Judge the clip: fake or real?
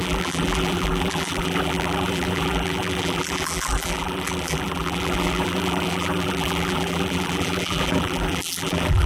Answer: fake